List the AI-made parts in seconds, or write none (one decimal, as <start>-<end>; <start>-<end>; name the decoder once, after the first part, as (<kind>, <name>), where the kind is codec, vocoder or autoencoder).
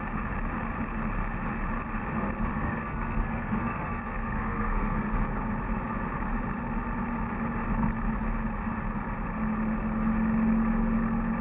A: 2.5-5.1 (codec, SNAC)